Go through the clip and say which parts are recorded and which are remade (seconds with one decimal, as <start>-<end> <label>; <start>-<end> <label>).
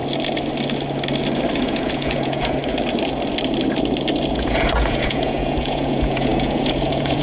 0.0-1.6 recorded; 1.6-2.6 remade; 2.6-4.3 recorded; 4.3-7.2 remade